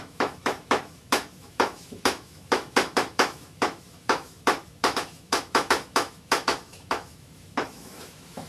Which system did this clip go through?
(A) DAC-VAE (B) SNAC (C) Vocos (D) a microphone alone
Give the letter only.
A